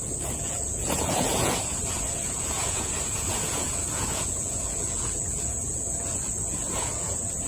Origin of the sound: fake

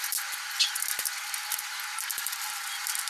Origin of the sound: real